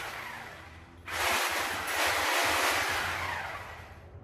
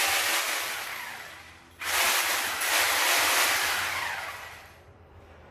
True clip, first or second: first